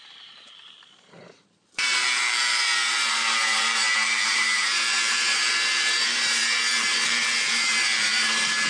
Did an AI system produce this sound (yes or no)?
yes